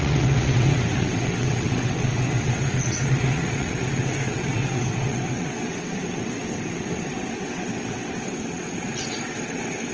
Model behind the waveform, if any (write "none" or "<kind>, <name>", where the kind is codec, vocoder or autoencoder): vocoder, WaveNeXt